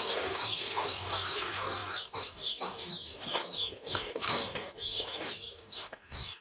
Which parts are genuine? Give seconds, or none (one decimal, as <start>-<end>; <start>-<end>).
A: none